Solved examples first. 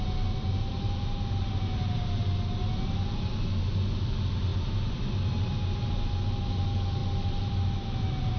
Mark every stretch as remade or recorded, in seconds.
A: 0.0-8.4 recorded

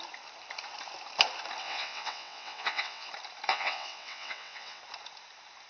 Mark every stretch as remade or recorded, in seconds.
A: 0.0-1.6 recorded; 1.6-3.1 remade; 3.1-3.5 recorded; 3.5-4.8 remade; 4.8-5.7 recorded

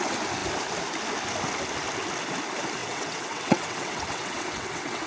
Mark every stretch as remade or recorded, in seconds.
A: 0.0-2.8 recorded; 2.8-5.1 remade

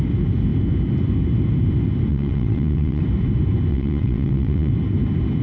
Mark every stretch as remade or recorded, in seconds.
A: 0.0-2.1 recorded; 2.1-3.0 remade; 3.0-3.7 recorded; 3.7-4.7 remade; 4.7-5.4 recorded